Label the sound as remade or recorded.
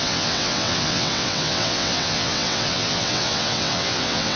remade